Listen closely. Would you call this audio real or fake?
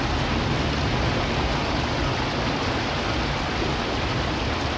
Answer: real